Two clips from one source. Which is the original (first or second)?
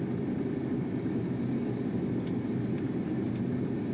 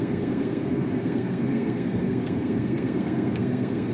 first